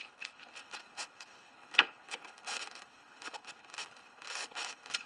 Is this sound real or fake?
fake